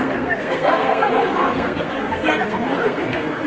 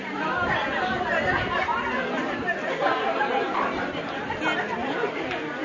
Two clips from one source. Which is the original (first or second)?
second